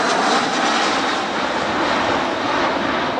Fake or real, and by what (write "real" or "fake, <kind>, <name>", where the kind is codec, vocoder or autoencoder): real